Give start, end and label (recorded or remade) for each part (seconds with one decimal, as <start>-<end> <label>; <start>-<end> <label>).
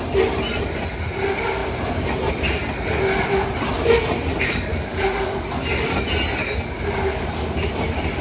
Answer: 0.0-4.3 recorded; 4.3-6.0 remade; 6.0-6.4 recorded; 6.4-7.7 remade; 7.7-8.2 recorded